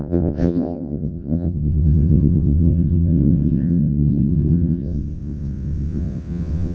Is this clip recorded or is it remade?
remade